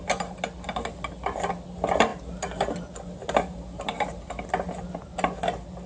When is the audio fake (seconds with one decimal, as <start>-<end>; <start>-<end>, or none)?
none